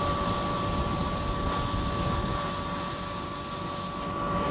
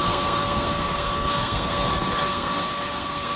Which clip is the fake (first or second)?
second